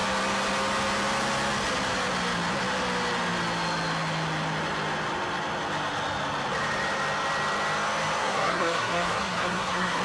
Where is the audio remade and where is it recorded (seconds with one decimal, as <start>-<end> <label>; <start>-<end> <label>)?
0.0-8.2 recorded; 8.2-10.0 remade